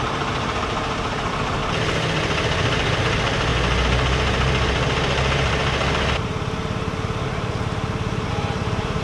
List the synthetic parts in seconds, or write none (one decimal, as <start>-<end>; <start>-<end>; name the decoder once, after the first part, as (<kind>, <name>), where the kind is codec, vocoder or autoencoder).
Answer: 0.0-1.6 (vocoder, BigVGAN v2); 3.0-3.5; 8.3-9.0

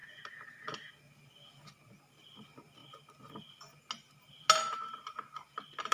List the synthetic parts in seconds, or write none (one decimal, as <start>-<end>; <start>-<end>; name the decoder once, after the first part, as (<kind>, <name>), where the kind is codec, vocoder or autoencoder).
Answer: none